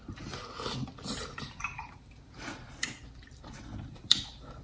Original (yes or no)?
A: yes